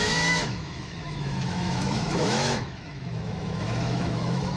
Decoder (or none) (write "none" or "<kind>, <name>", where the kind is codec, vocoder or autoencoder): autoencoder, DAC-VAE